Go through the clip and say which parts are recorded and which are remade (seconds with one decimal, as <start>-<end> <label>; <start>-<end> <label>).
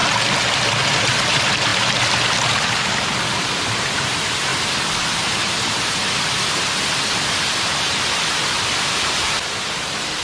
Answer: 0.0-0.9 recorded; 0.9-1.7 remade; 1.7-3.7 recorded; 3.7-4.5 remade; 4.5-7.7 recorded; 7.7-10.2 remade